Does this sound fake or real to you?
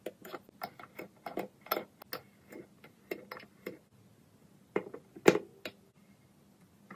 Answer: real